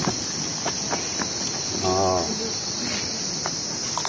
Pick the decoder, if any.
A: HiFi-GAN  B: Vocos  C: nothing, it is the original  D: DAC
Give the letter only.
C